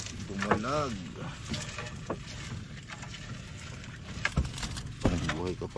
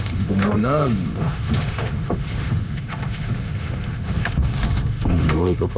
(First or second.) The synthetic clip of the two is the second